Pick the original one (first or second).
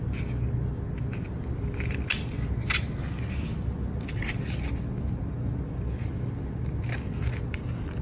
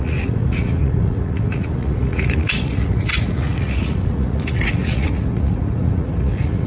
first